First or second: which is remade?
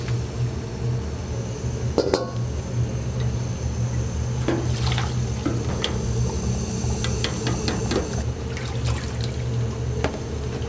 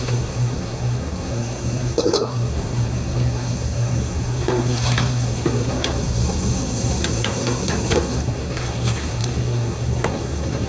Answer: second